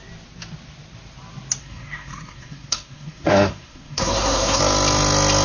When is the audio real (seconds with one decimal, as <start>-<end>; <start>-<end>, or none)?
0.0-1.6; 4.6-5.4